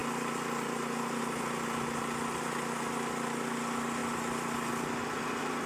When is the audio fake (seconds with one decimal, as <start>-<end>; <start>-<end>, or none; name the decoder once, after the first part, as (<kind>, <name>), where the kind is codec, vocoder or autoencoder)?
none